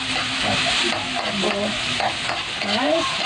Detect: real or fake real